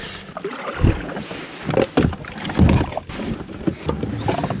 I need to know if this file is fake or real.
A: real